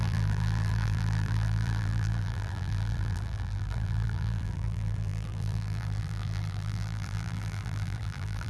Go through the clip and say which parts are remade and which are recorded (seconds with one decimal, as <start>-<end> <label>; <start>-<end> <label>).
0.0-8.5 remade